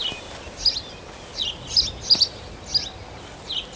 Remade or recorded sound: recorded